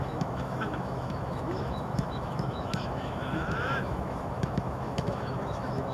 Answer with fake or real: fake